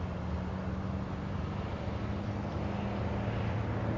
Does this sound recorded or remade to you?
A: recorded